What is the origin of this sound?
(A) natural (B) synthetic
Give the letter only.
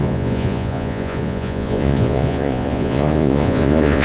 B